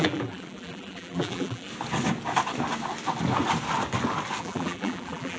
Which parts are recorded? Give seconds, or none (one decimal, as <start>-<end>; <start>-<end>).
1.7-4.4

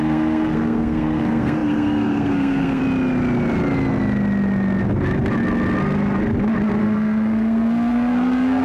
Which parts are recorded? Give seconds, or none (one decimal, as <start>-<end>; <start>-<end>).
2.8-6.8

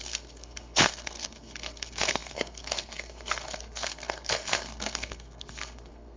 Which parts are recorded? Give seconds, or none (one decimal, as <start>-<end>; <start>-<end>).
none

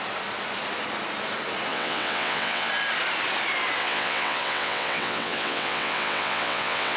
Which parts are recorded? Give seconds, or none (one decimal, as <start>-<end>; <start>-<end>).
0.0-1.7; 2.7-3.8

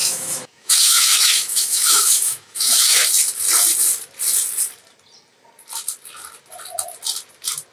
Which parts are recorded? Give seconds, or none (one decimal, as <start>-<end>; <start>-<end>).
3.0-7.7

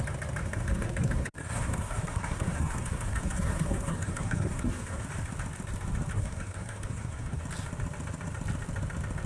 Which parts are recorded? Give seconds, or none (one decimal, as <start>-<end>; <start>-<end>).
0.0-0.4; 5.0-6.1; 7.4-9.3

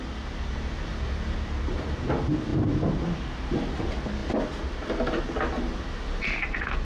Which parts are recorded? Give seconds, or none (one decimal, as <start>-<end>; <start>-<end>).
0.0-6.8